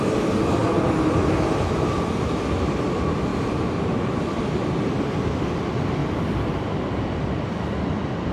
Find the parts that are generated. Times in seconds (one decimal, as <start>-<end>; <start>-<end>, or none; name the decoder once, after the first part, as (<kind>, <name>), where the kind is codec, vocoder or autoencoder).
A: 6.0-7.6 (vocoder, BigVGAN v2)